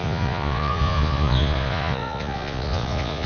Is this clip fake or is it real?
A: fake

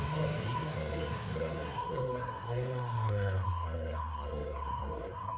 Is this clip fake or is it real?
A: fake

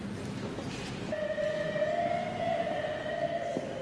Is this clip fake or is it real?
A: real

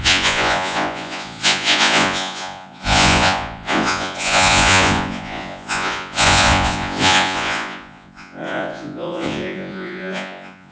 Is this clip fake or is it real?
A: fake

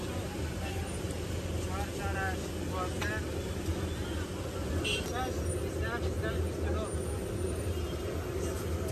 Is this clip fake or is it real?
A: real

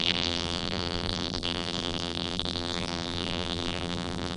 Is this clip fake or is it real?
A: fake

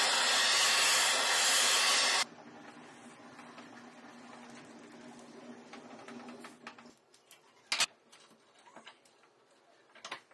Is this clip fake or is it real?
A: real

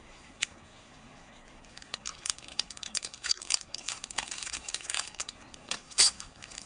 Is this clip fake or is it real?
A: fake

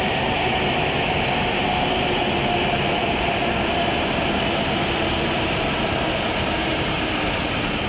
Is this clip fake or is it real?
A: real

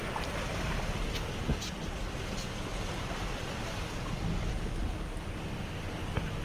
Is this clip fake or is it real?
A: real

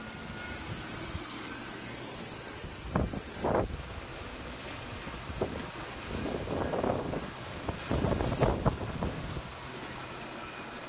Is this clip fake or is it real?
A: real